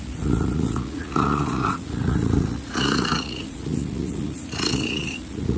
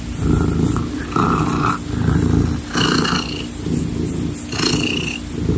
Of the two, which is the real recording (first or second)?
second